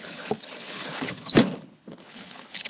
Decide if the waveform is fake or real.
fake